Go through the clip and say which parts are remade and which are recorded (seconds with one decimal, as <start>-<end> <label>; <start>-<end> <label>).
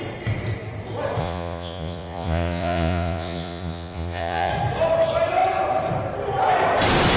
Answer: 0.0-1.2 recorded; 1.2-4.5 remade; 4.5-7.2 recorded